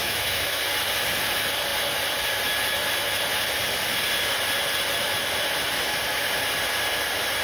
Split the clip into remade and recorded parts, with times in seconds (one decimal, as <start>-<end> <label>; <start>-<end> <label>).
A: 0.0-0.6 remade; 0.6-7.4 recorded